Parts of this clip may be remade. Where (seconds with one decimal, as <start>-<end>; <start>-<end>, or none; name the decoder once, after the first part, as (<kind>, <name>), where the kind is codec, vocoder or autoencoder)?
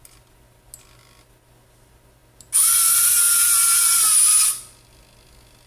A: none